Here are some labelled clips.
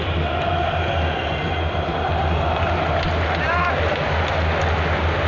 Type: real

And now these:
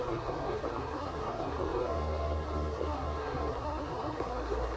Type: fake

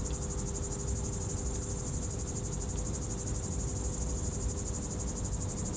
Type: real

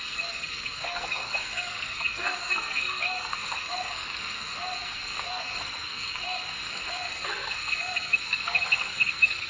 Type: fake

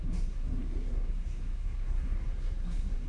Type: fake